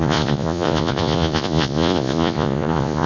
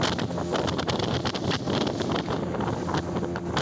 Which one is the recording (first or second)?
second